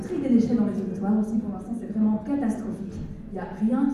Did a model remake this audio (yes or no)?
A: no